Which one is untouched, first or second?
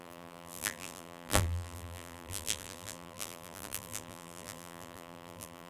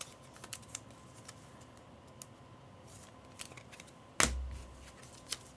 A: second